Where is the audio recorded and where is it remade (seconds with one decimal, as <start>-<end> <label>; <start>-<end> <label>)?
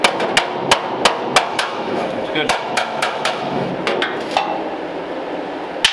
0.0-1.5 recorded; 1.5-3.7 remade; 3.7-5.9 recorded